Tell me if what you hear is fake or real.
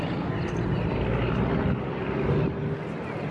real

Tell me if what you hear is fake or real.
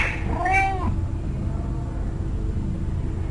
real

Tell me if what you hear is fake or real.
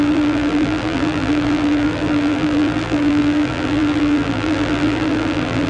fake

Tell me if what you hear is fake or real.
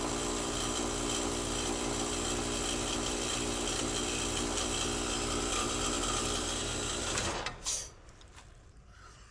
fake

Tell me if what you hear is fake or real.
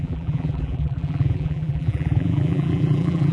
fake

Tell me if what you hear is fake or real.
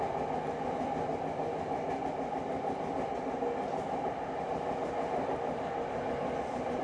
real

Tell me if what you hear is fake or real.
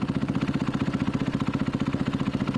real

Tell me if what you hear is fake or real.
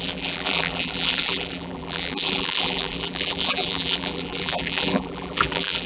fake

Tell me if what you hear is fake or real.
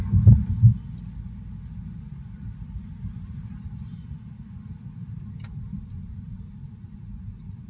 real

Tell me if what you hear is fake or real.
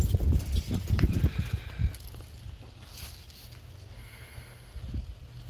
real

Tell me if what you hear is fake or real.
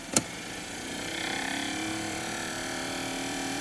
fake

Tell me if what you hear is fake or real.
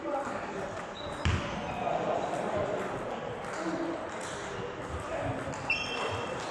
fake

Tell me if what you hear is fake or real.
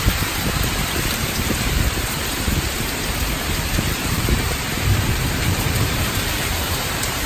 fake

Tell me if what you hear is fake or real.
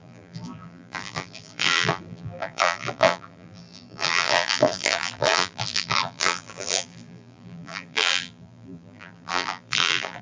fake